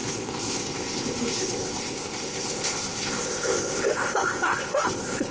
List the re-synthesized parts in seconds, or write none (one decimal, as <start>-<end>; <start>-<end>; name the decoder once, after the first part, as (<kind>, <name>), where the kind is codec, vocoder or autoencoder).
0.0-5.3 (codec, ZipCodec)